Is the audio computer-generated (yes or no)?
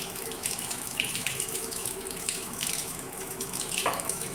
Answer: yes